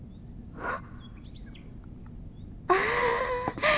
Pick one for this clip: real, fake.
real